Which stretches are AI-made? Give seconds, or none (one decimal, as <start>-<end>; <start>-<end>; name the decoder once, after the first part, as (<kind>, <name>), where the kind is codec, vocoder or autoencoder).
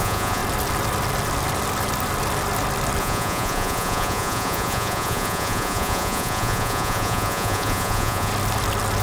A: 0.0-0.4 (vocoder, Vocos); 3.0-8.3